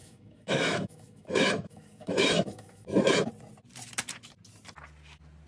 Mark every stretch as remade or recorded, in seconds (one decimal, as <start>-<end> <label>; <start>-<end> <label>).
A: 0.0-3.3 remade; 3.3-5.5 recorded